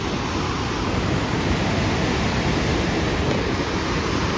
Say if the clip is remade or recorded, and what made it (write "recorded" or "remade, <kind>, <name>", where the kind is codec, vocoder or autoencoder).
recorded